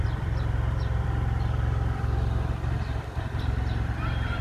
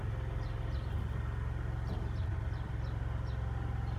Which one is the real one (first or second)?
second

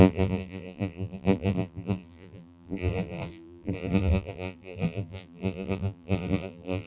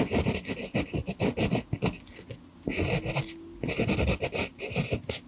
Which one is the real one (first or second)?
second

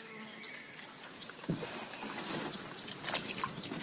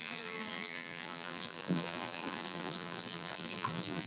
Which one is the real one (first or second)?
first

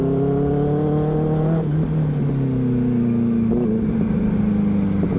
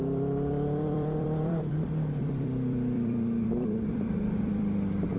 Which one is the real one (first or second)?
first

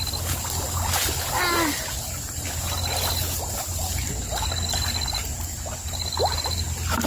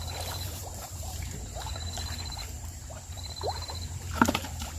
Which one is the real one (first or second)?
first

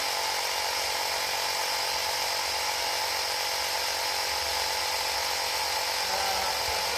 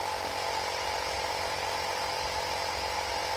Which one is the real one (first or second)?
first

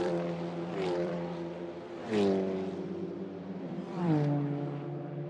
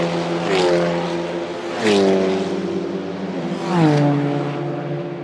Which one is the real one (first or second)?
second